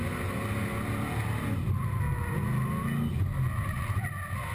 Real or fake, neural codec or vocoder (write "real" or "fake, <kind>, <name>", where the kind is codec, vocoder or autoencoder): real